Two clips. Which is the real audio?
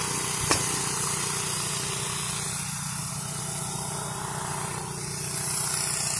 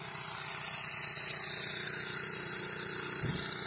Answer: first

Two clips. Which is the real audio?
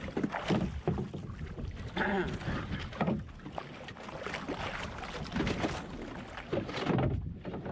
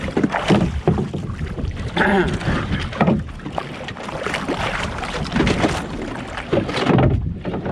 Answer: first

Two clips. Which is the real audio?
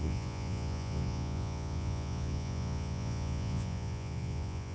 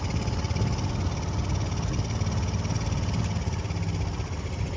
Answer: second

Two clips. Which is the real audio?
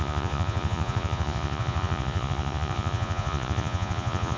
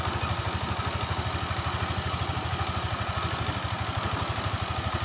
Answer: second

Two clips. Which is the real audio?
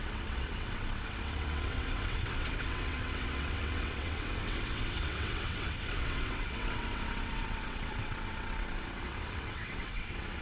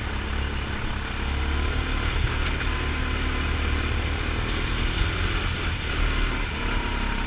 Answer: second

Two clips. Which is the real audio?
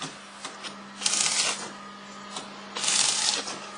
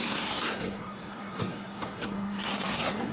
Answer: first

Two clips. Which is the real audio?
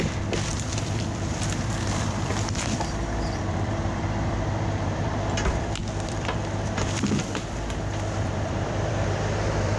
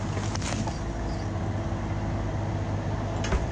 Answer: second